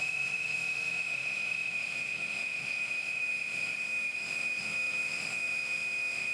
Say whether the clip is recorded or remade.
remade